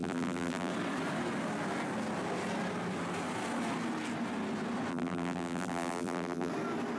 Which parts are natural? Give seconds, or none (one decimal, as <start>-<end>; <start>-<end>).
0.7-4.9; 6.5-7.0